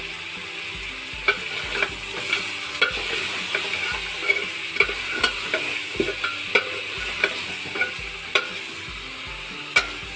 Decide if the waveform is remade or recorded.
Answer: recorded